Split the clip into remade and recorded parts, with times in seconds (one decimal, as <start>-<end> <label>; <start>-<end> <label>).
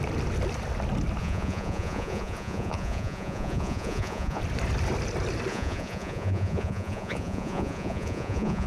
0.0-1.2 recorded; 1.2-4.4 remade; 4.4-5.5 recorded; 5.5-8.7 remade